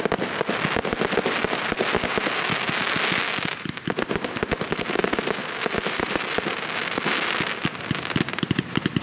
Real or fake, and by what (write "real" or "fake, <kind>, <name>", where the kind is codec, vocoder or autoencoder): real